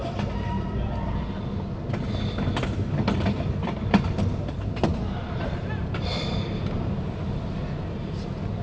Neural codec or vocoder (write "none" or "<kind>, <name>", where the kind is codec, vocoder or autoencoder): none